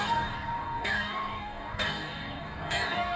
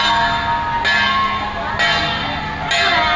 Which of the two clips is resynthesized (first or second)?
first